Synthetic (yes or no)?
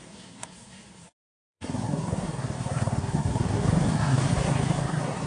yes